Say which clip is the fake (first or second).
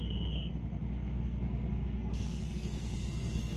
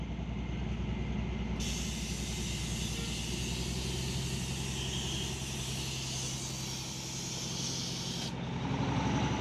first